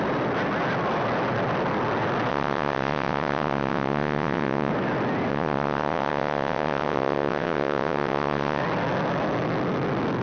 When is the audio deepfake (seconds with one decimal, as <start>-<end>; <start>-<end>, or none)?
2.3-4.7; 5.3-8.6